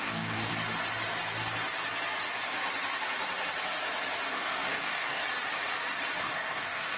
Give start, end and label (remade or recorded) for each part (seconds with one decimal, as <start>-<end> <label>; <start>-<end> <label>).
0.0-0.5 remade; 0.5-4.3 recorded; 4.3-5.2 remade; 5.2-6.2 recorded; 6.2-7.0 remade